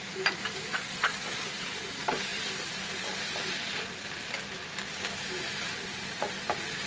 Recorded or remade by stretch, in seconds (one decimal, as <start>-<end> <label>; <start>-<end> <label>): 0.0-0.7 recorded; 0.7-1.5 remade; 1.5-6.9 recorded